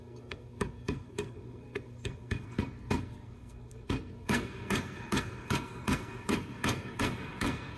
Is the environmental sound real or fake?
fake